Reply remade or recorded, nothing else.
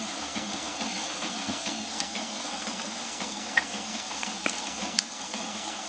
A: remade